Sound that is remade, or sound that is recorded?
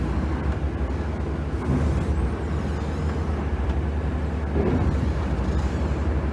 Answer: recorded